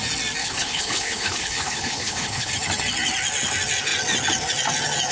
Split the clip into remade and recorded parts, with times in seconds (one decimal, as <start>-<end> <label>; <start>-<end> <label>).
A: 0.0-0.4 recorded; 0.4-2.5 remade; 2.5-5.1 recorded